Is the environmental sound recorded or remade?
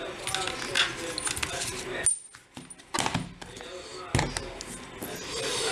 recorded